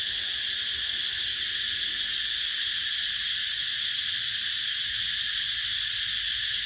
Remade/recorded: recorded